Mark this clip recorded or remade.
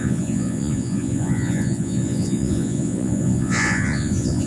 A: remade